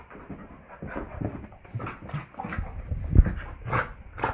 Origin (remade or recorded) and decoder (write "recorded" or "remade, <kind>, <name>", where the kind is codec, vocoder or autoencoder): recorded